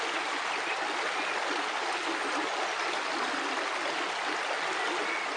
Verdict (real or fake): real